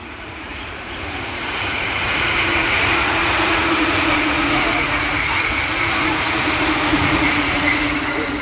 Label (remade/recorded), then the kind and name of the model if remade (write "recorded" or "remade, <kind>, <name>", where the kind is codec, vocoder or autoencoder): remade, vocoder, Vocos